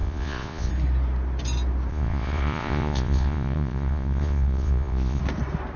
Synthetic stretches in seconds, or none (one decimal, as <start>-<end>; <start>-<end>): 0.0-0.7; 1.9-5.2